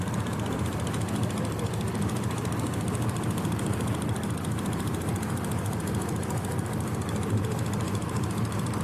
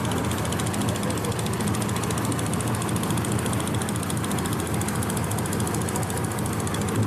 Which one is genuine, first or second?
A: second